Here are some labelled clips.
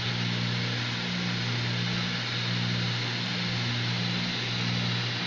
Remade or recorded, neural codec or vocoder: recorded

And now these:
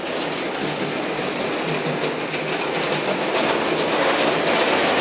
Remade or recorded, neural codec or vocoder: recorded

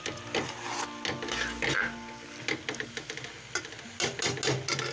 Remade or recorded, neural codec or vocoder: recorded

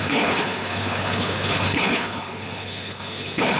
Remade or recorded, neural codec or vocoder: remade, codec, HILCodec